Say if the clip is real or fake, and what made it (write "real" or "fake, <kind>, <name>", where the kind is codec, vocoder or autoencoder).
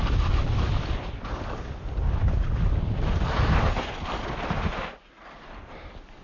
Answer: real